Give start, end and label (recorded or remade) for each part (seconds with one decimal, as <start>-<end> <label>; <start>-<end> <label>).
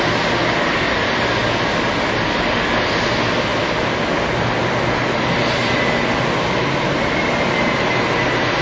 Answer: 0.0-8.6 recorded